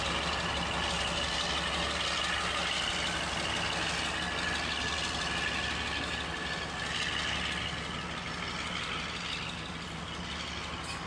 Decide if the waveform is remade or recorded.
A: recorded